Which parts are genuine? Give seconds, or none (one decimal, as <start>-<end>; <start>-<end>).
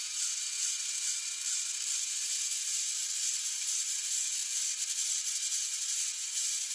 1.4-2.0; 2.9-3.8; 4.4-5.3